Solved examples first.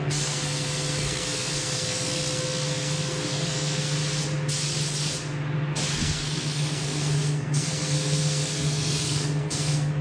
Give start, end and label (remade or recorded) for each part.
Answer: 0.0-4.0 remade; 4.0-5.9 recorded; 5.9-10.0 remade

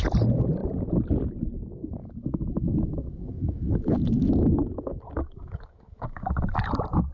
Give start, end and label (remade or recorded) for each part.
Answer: 0.0-2.0 recorded; 2.0-6.3 remade; 6.3-7.1 recorded

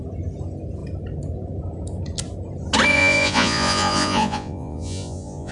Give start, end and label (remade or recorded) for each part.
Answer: 0.0-2.9 recorded; 2.9-5.5 remade

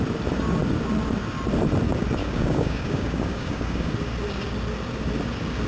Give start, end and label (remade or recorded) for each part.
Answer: 0.0-2.2 recorded; 2.2-3.9 remade; 3.9-5.7 recorded

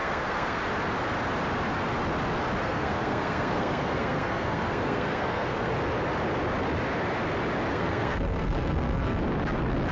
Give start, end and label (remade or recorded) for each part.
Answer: 0.0-0.6 remade; 0.6-2.6 recorded; 2.6-5.7 remade; 5.7-7.7 recorded; 7.7-9.2 remade; 9.2-9.9 recorded

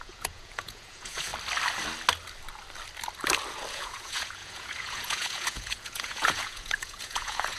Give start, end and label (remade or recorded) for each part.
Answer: 0.0-1.3 remade; 1.3-3.7 recorded; 3.7-7.6 remade

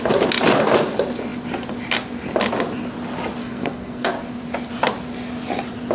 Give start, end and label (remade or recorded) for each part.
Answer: 0.0-3.4 recorded; 3.4-4.1 remade; 4.1-5.9 recorded